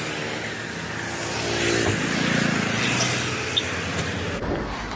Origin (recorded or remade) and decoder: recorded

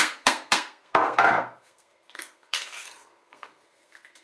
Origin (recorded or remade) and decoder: remade, codec, SNAC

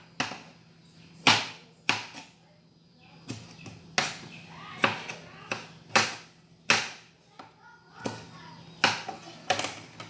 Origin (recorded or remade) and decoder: recorded